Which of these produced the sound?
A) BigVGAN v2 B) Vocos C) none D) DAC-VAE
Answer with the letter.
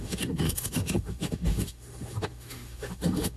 D